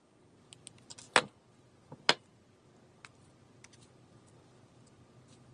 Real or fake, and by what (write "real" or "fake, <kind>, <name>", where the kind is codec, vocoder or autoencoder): real